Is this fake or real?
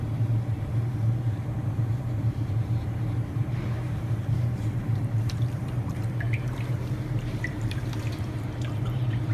fake